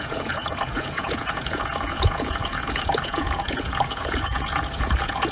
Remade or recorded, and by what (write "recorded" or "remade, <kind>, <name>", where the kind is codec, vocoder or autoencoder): remade, vocoder, Vocos